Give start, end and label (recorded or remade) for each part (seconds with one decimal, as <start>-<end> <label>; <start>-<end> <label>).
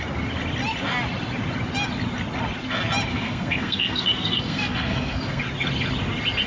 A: 0.0-3.1 recorded; 3.1-5.4 remade; 5.4-6.5 recorded